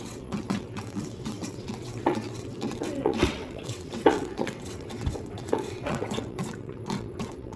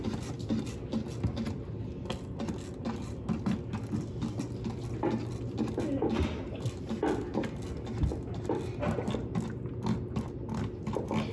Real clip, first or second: second